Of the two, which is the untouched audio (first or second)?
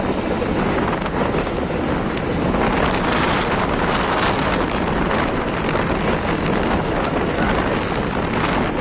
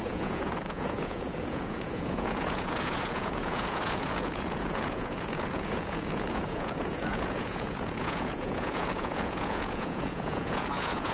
first